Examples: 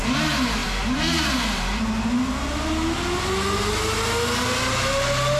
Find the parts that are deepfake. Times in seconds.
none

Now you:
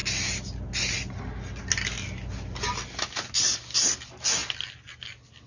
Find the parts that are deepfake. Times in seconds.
none

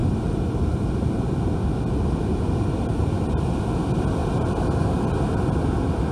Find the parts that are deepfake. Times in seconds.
4.2-5.0 (vocoder, BigVGAN v2)

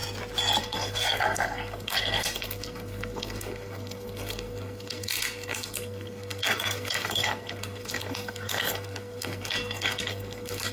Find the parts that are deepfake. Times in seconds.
0.6-10.7 (codec, SNAC)

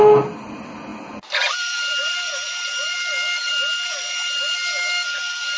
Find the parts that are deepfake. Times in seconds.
none

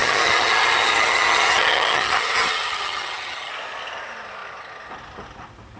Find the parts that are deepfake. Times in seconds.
0.0-3.5 (vocoder, HiFi-GAN)